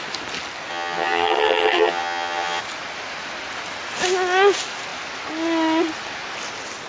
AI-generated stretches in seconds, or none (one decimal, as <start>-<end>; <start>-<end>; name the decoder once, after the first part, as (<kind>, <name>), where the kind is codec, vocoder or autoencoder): 0.7-2.6 (vocoder, HiFi-GAN)